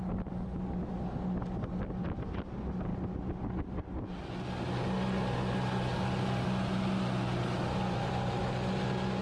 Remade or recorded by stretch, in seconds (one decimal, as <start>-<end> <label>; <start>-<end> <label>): 0.0-9.2 recorded